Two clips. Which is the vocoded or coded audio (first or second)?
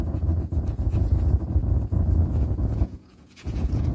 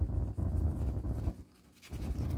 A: first